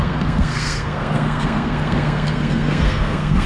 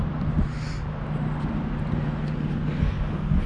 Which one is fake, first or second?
first